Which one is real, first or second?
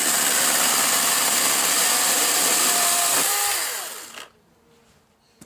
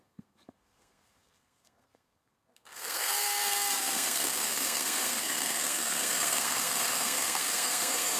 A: first